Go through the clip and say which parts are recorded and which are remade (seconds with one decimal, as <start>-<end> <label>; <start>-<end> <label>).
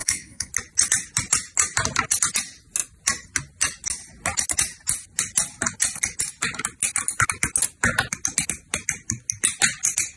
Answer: 0.0-0.5 remade; 0.5-10.2 recorded